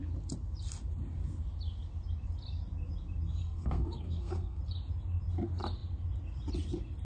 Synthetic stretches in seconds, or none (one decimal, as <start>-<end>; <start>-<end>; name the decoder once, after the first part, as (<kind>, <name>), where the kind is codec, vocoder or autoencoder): 3.4-4.6 (codec, SNAC)